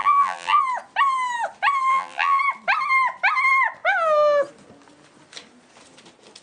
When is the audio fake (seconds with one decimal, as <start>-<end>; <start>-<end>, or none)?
0.0-0.6; 1.9-2.4